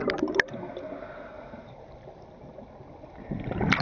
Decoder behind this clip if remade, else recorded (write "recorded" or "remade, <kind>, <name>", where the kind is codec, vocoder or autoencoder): recorded